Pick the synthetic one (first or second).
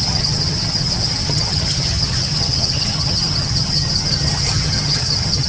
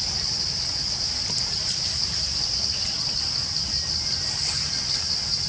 first